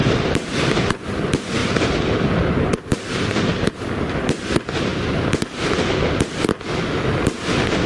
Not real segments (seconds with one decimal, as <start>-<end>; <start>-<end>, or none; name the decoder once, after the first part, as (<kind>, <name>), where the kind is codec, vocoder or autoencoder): 0.0-0.7 (vocoder, BigVGAN v2); 1.6-3.7; 4.9-5.8